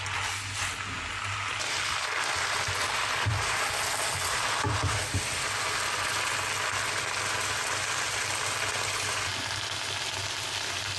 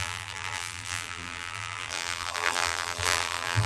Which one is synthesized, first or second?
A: second